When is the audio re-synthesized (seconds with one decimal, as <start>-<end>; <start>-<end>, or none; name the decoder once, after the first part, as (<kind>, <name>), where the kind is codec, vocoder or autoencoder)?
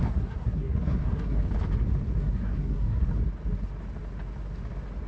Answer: 0.0-1.4 (codec, SNAC); 2.2-3.1